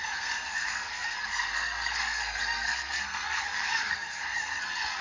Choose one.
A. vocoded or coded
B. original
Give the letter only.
A